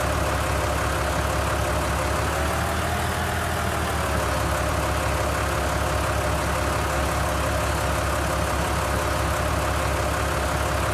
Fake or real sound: real